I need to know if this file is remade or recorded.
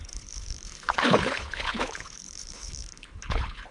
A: remade